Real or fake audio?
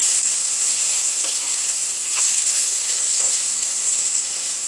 fake